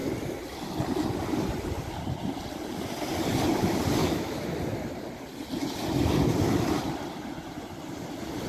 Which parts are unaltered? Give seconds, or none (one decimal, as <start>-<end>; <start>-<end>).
0.0-4.0; 4.6-8.5

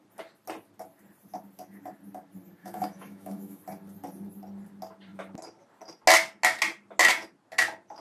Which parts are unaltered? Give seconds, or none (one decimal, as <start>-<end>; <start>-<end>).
0.0-2.6; 3.6-8.0

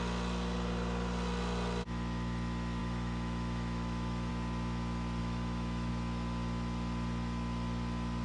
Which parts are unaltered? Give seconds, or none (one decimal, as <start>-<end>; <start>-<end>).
0.0-2.8; 4.3-5.2; 5.9-8.2

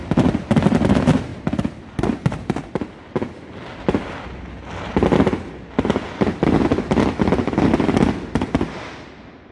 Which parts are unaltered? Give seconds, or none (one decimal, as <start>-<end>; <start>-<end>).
0.0-9.5

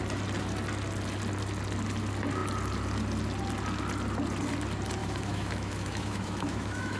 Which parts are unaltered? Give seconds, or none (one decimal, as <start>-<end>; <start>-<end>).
0.0-5.0

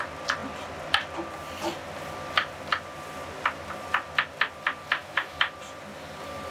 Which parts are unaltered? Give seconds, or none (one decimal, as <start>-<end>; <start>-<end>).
0.0-5.0; 5.5-6.5

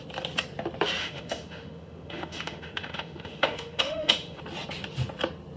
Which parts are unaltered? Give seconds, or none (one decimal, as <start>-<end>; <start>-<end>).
0.0-1.0; 4.4-5.6

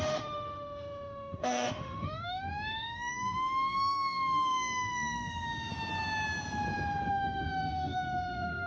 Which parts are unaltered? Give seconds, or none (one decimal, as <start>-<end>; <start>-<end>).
5.7-7.1